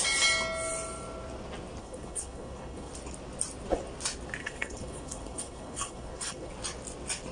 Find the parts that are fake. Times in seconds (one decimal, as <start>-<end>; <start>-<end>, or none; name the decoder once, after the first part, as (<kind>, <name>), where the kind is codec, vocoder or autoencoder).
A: 1.8-2.9 (codec, HILCodec); 4.4-6.5